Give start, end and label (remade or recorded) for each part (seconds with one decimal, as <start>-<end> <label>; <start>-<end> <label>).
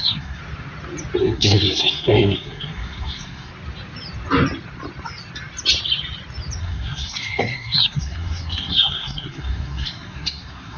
0.0-0.4 remade; 0.4-1.2 recorded; 1.2-3.5 remade; 3.5-6.6 recorded; 6.6-10.8 remade